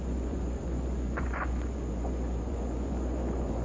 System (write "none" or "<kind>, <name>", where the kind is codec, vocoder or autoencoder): vocoder, Vocos